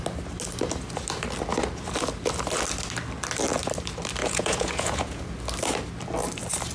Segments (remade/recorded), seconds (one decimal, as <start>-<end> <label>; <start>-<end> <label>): 0.0-4.2 recorded; 4.2-5.2 remade; 5.2-6.7 recorded